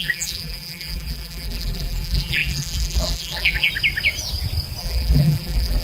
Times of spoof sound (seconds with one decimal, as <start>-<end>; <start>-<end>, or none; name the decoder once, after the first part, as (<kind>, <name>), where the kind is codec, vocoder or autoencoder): 0.0-3.7 (vocoder, BigVGAN v2); 4.8-5.8